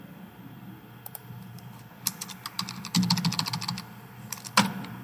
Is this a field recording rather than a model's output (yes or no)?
yes